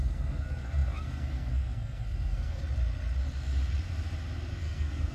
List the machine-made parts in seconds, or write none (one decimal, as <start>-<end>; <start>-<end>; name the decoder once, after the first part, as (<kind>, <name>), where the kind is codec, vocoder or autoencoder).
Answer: 0.0-2.6 (codec, SNAC); 4.6-5.1